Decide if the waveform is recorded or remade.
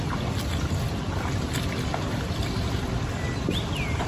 recorded